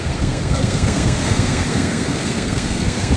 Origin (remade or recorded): remade